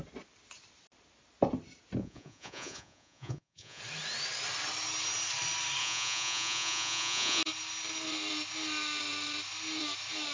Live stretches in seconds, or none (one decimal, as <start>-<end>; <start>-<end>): 0.0-2.0; 3.8-5.8; 7.4-10.3